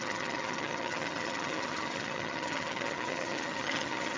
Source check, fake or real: fake